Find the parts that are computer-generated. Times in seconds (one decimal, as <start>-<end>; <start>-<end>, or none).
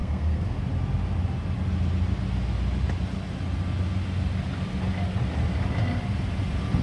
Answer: 0.0-0.6